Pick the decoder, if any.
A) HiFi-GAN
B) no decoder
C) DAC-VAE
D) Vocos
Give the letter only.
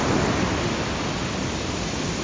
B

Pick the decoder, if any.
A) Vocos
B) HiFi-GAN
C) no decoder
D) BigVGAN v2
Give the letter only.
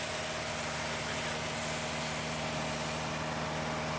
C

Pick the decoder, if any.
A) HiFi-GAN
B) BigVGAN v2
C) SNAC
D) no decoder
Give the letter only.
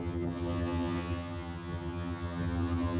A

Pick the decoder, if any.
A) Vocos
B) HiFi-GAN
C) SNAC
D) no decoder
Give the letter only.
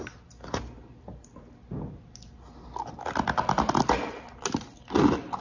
D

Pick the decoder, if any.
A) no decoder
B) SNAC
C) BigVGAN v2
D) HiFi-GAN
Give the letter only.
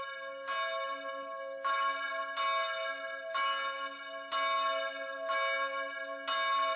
A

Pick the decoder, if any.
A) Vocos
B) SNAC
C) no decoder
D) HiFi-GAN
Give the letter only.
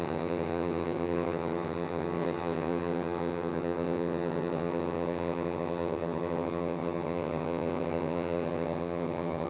D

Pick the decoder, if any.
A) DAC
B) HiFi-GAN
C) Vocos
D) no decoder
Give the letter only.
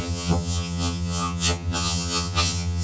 B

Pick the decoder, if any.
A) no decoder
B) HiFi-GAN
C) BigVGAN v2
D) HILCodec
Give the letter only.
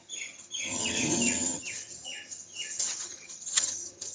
B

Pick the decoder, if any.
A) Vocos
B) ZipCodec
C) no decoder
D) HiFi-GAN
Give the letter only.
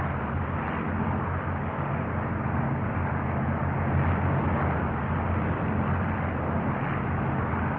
C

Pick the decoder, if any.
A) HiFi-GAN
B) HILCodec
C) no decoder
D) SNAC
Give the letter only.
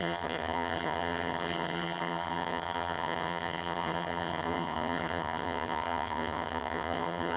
A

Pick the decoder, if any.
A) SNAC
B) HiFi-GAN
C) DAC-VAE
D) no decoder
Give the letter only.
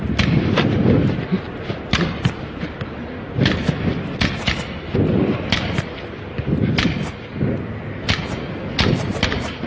D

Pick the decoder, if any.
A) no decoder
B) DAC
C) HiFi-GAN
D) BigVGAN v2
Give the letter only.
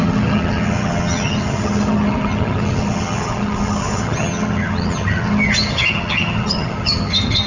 C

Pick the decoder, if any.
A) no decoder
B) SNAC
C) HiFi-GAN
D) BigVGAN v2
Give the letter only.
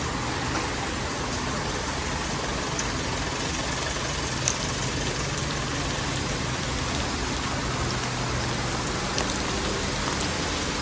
A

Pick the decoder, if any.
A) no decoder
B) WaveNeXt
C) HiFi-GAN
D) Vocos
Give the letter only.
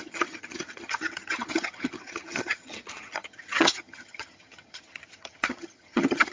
C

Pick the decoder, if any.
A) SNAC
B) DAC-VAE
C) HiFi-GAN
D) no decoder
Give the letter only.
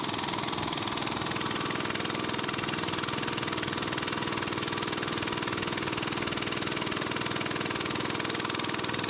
D